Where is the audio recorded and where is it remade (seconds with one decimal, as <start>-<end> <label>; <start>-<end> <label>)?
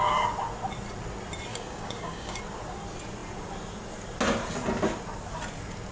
0.0-1.5 recorded; 1.5-2.4 remade; 2.4-5.9 recorded